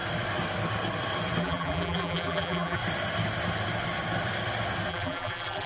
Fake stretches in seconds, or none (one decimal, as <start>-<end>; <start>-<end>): 1.4-2.8; 4.9-5.7